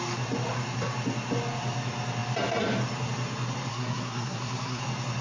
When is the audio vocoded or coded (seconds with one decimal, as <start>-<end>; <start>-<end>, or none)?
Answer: 3.7-4.8